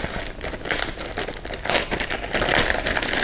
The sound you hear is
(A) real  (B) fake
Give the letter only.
A